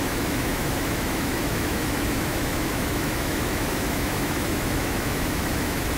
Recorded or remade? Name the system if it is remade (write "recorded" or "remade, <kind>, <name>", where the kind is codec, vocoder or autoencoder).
remade, autoencoder, DAC-VAE